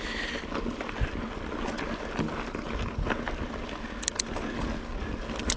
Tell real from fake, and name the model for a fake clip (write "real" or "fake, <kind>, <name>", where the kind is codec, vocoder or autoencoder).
real